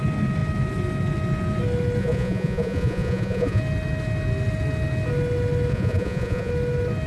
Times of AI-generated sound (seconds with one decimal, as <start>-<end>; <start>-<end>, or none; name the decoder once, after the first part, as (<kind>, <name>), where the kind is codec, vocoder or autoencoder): 2.0-3.6 (vocoder, Vocos); 5.7-6.5